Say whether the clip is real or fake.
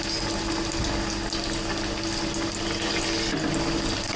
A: real